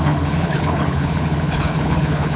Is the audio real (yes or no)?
no